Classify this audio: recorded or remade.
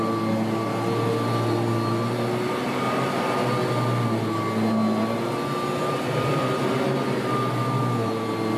recorded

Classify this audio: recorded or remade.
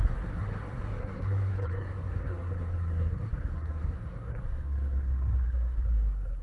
remade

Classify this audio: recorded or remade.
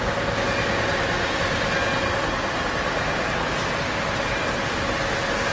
recorded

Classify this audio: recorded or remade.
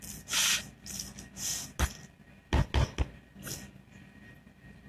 recorded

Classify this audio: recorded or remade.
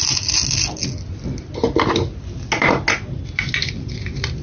recorded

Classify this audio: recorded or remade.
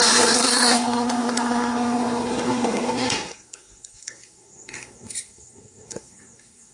remade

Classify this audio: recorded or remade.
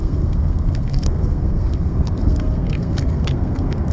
remade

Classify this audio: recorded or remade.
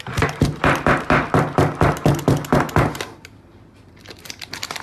recorded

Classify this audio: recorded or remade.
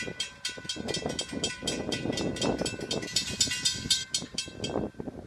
recorded